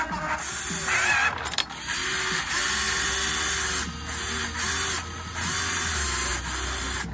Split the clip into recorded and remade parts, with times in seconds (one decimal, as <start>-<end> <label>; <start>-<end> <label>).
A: 0.0-6.3 recorded; 6.3-7.1 remade